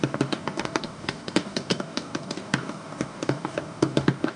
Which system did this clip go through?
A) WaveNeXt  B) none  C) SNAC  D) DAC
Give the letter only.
D